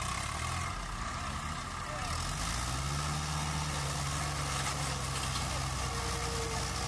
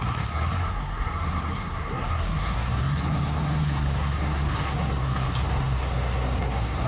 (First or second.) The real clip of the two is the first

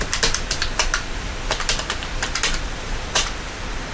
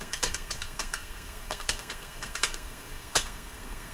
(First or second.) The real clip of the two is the first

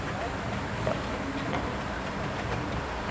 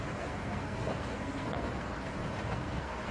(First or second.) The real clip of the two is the first